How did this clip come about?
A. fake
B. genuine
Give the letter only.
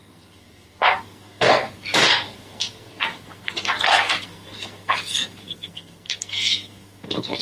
A